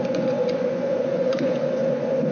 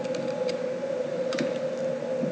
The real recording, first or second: second